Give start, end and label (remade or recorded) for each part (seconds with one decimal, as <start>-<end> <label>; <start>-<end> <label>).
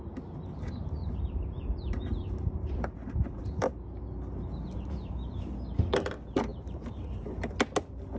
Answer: 0.0-1.0 recorded; 1.0-3.7 remade; 3.7-6.5 recorded; 6.5-7.5 remade; 7.5-8.2 recorded